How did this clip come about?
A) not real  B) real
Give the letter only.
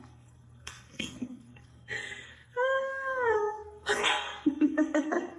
A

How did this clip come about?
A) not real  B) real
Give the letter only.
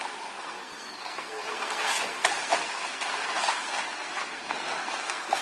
A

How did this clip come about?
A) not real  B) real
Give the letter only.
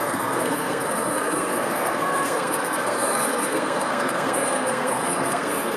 A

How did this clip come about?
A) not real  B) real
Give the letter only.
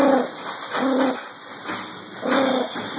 B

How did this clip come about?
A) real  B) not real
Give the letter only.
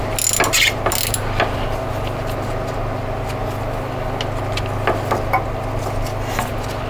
A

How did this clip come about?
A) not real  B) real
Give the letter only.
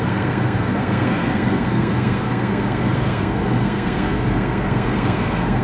A